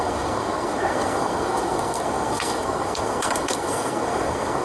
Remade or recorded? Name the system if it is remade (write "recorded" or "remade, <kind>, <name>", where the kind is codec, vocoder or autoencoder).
remade, codec, SNAC